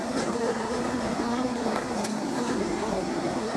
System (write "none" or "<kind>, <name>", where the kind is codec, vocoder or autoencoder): codec, SNAC